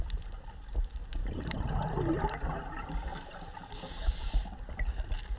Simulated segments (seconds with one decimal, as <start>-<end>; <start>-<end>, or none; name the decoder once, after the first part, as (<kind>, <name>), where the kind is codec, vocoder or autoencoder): 1.2-2.1 (vocoder, BigVGAN v2); 3.1-3.9